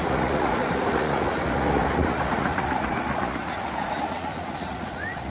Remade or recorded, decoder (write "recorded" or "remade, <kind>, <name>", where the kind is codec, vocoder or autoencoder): remade, vocoder, Vocos